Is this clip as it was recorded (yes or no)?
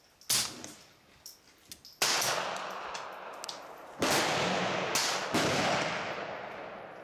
yes